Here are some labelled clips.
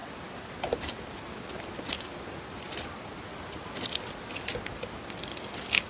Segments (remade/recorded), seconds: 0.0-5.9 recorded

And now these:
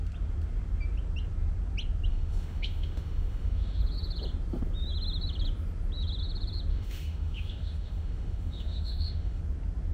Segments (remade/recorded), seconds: 0.0-2.1 recorded; 2.1-3.8 remade; 3.8-6.7 recorded; 6.7-9.4 remade; 9.4-9.9 recorded

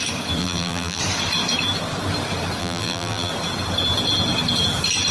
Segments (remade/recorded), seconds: 0.0-0.4 recorded; 0.4-1.0 remade; 1.0-2.6 recorded; 2.6-3.3 remade; 3.3-5.1 recorded